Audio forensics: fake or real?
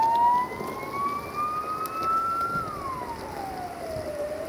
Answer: real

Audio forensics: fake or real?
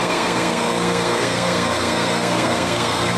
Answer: fake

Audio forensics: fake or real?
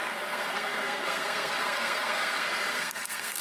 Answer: fake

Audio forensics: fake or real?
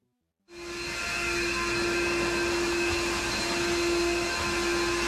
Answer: real